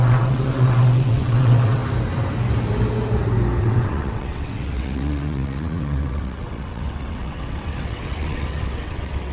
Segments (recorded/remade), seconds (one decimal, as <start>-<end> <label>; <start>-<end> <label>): 0.0-1.8 remade; 1.8-3.6 recorded; 3.6-9.3 remade